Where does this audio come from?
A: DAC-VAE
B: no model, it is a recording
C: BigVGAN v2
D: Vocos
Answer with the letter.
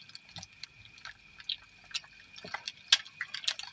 B